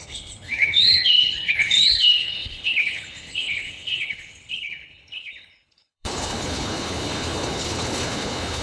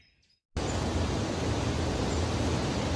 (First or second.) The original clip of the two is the second